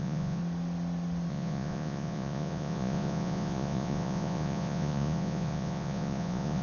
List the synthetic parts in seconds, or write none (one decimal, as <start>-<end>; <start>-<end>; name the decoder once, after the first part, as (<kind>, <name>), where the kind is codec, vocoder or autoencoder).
0.0-0.4 (vocoder, Vocos); 1.3-6.6